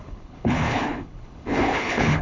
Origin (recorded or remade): remade